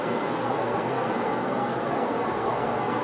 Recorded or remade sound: remade